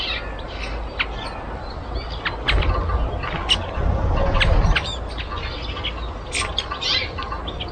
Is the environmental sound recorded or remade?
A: recorded